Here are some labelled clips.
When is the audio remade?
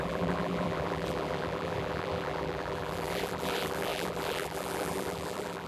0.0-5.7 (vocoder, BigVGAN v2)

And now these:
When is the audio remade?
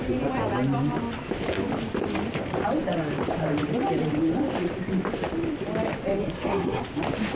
6.2-6.8 (codec, SNAC)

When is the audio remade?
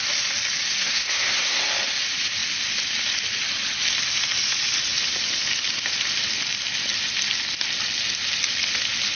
0.8-1.6 (codec, SNAC)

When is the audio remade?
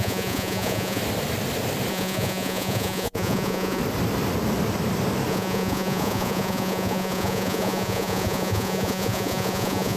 0.0-1.0 (vocoder, Vocos); 1.9-3.8; 5.3-10.0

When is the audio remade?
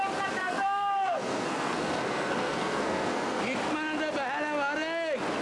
0.4-3.4 (codec, SNAC)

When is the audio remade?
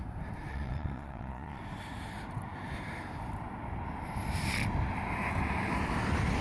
0.5-1.6 (vocoder, Vocos)